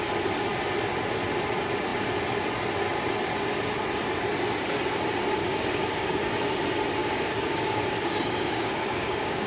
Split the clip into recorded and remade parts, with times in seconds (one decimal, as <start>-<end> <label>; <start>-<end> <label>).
0.0-5.4 recorded; 5.4-6.3 remade; 6.3-7.0 recorded; 7.0-9.5 remade

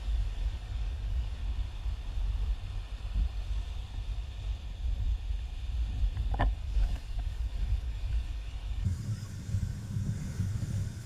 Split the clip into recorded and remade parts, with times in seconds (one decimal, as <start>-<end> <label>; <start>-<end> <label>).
0.0-1.4 remade; 1.4-6.4 recorded; 6.4-11.1 remade

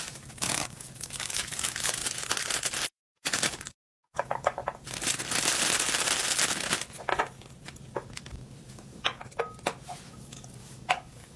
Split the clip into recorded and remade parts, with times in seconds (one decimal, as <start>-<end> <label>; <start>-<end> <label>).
0.0-2.0 remade; 2.0-3.0 recorded; 3.0-4.6 remade; 4.6-8.7 recorded; 8.7-9.2 remade; 9.2-10.1 recorded; 10.1-11.4 remade

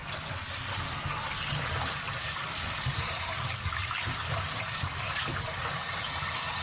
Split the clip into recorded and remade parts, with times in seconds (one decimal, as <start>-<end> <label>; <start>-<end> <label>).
0.0-2.2 recorded; 2.2-6.0 remade; 6.0-6.6 recorded

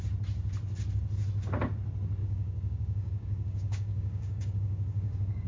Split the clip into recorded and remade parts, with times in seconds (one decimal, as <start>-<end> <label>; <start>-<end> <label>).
0.0-2.2 recorded; 2.2-5.5 remade